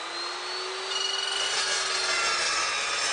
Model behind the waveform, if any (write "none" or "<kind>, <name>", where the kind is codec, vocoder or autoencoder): none